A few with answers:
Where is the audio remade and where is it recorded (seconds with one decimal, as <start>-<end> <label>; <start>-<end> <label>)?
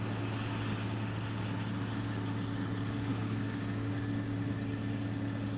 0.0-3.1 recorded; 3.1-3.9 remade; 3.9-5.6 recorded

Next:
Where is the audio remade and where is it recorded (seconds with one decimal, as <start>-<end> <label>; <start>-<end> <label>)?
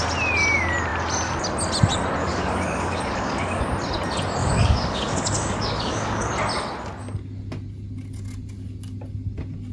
0.0-2.2 recorded; 2.2-3.6 remade; 3.6-4.4 recorded; 4.4-6.3 remade; 6.3-9.7 recorded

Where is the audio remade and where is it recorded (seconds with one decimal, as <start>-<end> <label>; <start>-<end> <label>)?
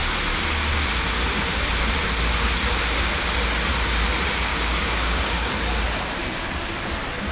0.0-4.5 recorded; 4.5-5.5 remade; 5.5-7.3 recorded